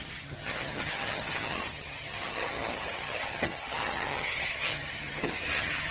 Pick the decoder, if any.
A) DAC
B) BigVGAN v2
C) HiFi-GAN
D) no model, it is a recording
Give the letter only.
C